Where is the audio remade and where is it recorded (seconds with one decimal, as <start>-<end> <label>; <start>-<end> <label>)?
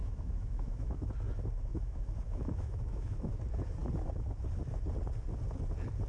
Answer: 0.0-1.1 remade; 1.1-1.7 recorded; 1.7-3.4 remade; 3.4-6.1 recorded